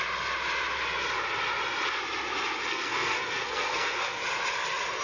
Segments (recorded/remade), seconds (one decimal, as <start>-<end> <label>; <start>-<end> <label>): 0.0-2.7 recorded; 2.7-4.2 remade; 4.2-5.0 recorded